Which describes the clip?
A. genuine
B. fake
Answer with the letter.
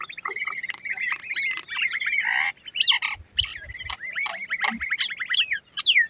A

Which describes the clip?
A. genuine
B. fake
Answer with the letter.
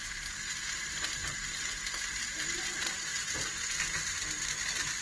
A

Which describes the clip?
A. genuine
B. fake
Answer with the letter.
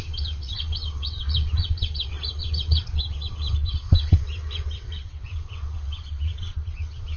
B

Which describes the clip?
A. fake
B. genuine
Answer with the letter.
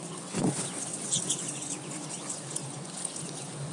A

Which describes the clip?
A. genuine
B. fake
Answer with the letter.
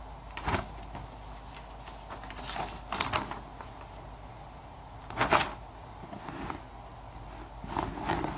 A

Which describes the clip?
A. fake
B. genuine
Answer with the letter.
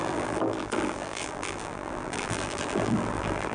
A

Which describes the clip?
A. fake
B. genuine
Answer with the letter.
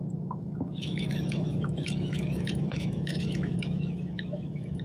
A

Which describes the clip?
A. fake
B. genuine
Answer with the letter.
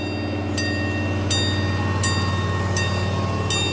B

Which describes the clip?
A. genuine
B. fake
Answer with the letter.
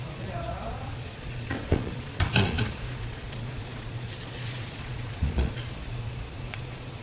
B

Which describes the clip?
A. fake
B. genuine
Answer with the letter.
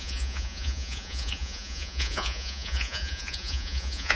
A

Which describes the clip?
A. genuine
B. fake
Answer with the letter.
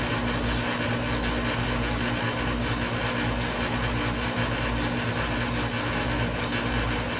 A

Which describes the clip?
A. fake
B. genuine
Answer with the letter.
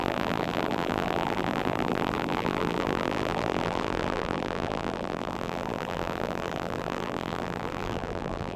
A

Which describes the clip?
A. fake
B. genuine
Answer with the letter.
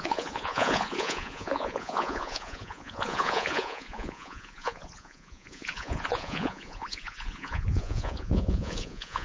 A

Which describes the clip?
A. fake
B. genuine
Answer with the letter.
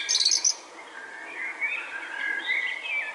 B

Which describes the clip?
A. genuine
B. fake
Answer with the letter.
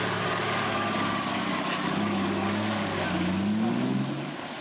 B